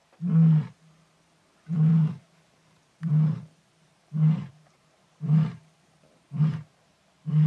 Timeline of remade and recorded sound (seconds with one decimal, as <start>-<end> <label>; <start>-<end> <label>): 0.0-1.9 recorded; 1.9-6.4 remade; 6.4-7.5 recorded